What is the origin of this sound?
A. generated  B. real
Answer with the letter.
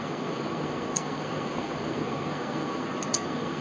A